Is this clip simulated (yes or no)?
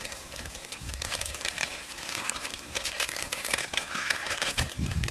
yes